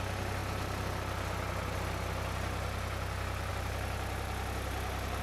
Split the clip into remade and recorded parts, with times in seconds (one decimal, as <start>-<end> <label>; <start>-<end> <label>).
0.0-5.2 recorded